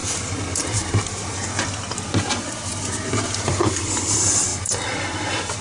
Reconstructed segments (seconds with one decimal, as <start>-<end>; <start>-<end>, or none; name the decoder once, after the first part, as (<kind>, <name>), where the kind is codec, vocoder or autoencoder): 3.4-4.5 (vocoder, BigVGAN v2)